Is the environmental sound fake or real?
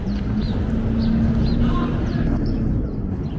real